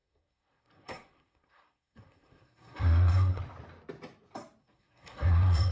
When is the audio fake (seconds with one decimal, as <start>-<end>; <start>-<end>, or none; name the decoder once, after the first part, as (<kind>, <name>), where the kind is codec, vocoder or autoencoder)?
0.0-3.4 (codec, SNAC); 4.6-5.7